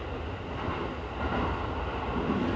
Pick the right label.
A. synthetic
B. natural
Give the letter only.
B